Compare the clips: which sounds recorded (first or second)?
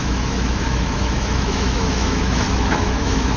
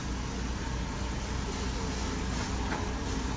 second